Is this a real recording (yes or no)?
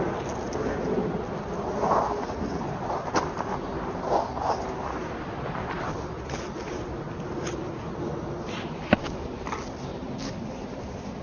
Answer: yes